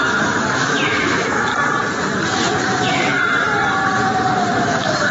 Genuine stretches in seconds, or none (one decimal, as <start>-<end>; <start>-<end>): 1.5-2.6; 3.1-4.0